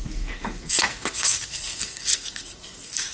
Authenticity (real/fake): fake